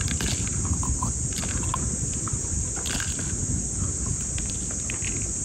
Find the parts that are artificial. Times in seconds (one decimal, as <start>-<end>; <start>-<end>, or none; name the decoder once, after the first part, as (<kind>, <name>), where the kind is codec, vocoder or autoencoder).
none